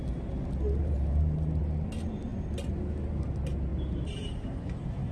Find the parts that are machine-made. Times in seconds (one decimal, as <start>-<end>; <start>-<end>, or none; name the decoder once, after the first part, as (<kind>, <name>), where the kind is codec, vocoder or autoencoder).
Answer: 0.8-1.6 (vocoder, BigVGAN v2); 3.7-5.1